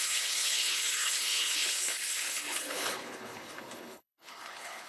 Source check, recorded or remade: remade